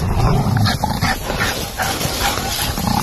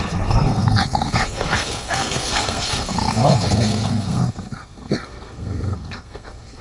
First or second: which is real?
first